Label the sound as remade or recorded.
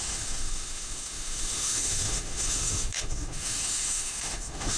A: remade